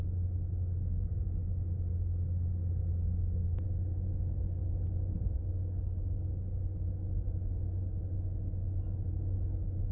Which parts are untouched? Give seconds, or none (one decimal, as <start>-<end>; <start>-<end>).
0.0-9.9